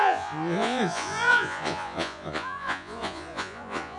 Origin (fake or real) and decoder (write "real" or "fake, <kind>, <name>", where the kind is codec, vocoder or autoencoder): fake, vocoder, Vocos